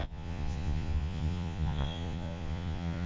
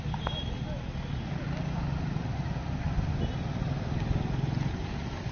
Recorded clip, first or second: second